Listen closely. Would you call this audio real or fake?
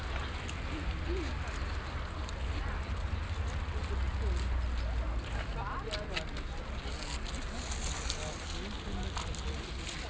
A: real